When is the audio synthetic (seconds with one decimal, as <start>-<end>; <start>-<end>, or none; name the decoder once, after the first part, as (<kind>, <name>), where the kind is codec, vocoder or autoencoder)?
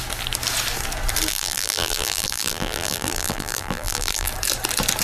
1.3-4.3 (vocoder, BigVGAN v2)